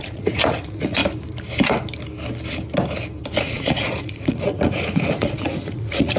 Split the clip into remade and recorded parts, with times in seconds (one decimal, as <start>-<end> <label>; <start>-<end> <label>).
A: 0.0-1.0 remade; 1.0-3.4 recorded; 3.4-6.2 remade